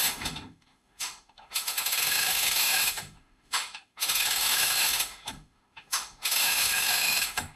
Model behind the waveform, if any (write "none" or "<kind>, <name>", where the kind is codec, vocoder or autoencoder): autoencoder, DAC-VAE